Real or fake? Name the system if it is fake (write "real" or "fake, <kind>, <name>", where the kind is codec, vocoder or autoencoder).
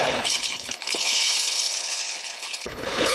fake, codec, HILCodec